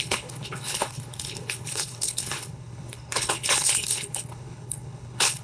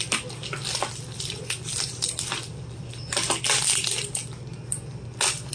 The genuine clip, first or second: second